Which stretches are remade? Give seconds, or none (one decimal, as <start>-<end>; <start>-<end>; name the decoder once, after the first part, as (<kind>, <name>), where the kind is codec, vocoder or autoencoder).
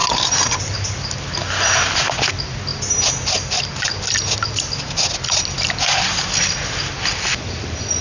none